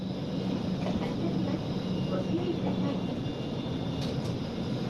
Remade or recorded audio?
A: recorded